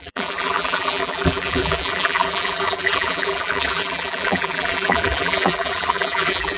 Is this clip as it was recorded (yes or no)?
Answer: no